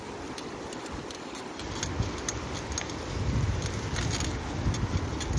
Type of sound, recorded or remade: recorded